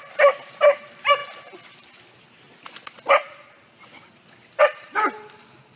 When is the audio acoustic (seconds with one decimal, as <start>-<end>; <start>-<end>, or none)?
0.0-5.8